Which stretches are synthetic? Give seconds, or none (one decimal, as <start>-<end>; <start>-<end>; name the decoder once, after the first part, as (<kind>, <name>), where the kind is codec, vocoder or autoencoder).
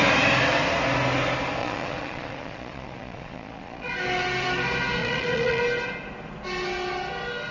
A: 1.6-3.9 (vocoder, Vocos); 5.0-5.6